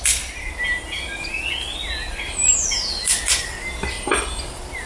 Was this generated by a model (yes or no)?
no